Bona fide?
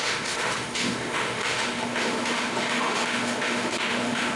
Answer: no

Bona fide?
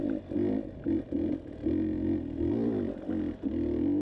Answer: yes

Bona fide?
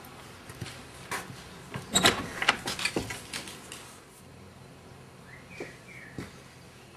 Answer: yes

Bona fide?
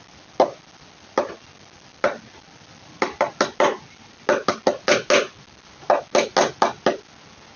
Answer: yes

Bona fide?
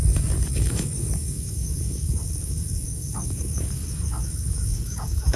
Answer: no